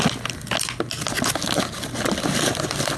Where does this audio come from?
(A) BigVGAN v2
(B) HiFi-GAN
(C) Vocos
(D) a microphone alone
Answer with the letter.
D